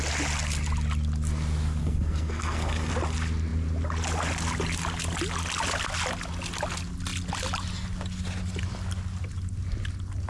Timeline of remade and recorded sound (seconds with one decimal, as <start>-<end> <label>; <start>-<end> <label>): 0.0-1.8 recorded; 1.8-2.9 remade; 2.9-10.3 recorded